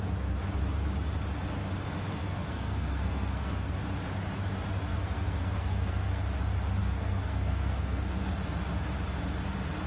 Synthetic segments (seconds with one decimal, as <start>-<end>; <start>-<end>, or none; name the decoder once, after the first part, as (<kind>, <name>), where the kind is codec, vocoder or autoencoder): 2.1-3.8 (codec, SNAC); 4.9-6.2; 6.8-8.3